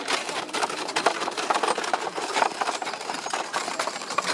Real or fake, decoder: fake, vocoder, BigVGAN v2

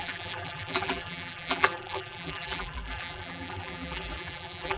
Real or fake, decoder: fake, vocoder, BigVGAN v2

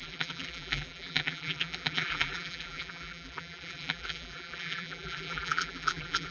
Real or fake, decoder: fake, vocoder, BigVGAN v2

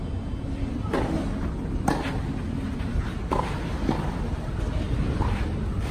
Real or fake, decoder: real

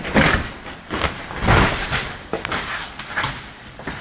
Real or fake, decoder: fake, vocoder, BigVGAN v2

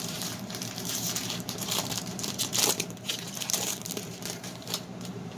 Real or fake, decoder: fake, vocoder, BigVGAN v2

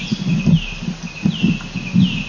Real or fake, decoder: real